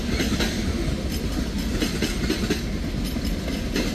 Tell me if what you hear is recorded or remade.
recorded